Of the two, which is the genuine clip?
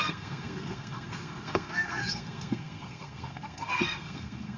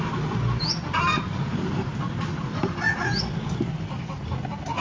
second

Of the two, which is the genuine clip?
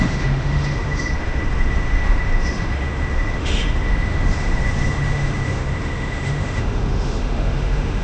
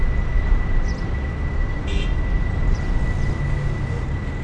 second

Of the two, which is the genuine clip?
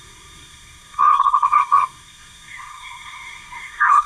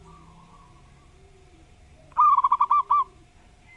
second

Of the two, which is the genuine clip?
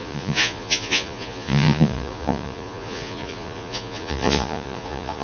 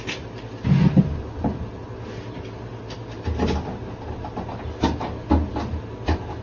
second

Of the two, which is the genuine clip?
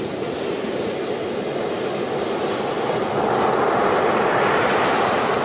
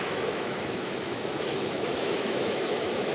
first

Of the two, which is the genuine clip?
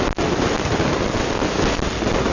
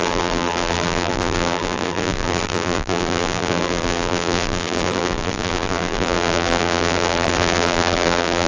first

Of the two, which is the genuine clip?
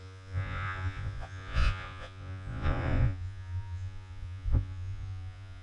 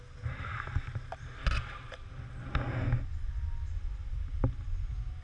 second